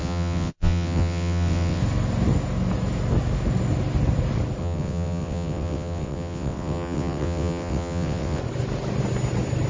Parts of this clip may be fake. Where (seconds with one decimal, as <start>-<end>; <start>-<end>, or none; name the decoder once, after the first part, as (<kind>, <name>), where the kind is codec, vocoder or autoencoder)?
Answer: 0.0-1.8 (vocoder, WaveNeXt); 4.6-8.4